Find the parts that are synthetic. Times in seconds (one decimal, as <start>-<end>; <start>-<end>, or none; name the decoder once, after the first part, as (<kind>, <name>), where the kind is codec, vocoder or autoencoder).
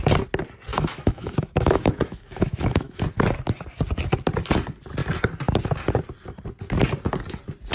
0.7-3.0 (autoencoder, DAC-VAE)